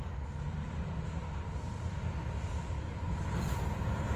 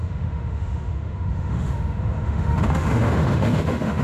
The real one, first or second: first